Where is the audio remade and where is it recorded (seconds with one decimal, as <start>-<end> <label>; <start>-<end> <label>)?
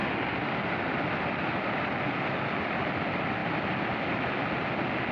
0.0-5.1 recorded